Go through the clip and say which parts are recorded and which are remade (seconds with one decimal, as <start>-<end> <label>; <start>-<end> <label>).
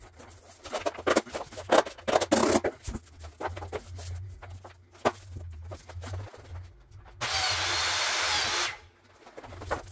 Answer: 0.0-9.9 recorded